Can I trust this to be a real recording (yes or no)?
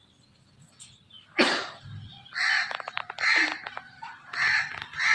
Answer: yes